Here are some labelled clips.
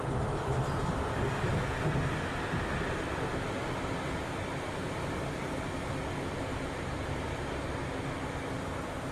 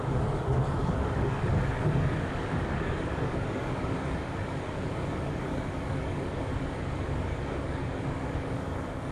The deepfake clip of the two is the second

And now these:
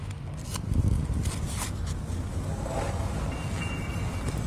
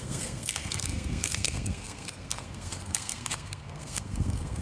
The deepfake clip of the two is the second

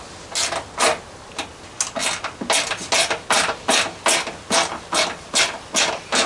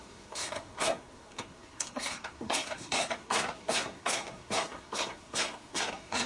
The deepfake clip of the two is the second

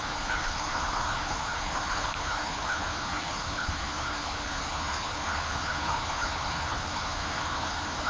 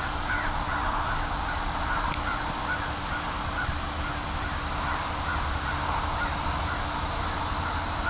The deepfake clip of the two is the first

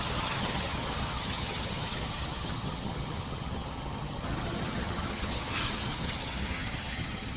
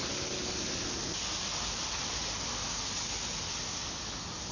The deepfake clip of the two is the first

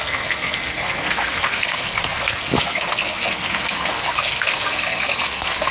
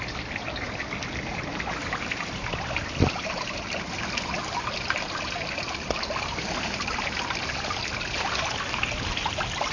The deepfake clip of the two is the first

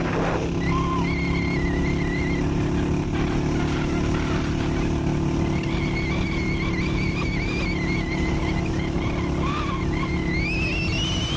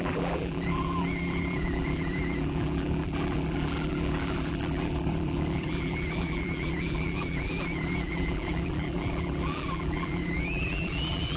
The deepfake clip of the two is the second